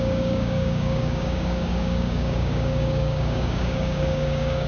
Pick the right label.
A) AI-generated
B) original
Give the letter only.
A